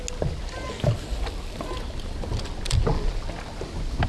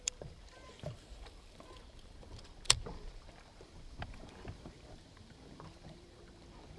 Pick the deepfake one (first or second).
second